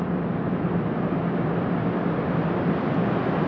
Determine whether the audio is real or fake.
real